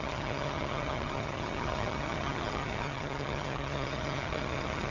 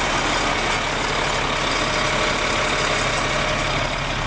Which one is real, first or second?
second